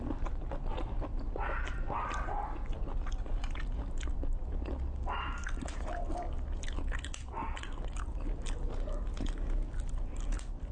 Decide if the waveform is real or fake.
real